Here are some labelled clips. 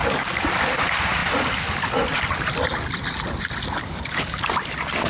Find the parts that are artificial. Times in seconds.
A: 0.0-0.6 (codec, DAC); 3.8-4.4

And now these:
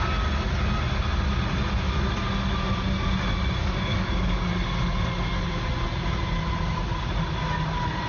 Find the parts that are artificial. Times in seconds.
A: 3.6-4.5 (codec, DAC)

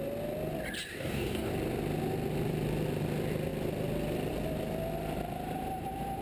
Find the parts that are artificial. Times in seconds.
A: 0.9-1.5 (codec, DAC)

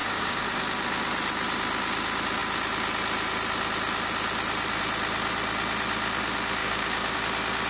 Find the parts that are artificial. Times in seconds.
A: 0.0-0.6 (codec, DAC); 6.6-7.2

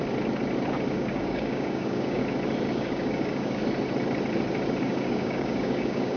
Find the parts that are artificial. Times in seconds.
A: 0.9-2.2 (codec, DAC); 2.7-3.6; 4.8-6.2

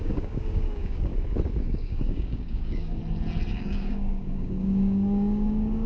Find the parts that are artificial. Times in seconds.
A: 0.0-1.1 (codec, DAC); 1.6-3.0; 3.5-5.9

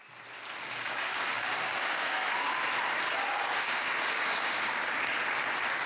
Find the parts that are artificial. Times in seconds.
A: 0.6-2.5 (codec, DAC); 3.2-4.8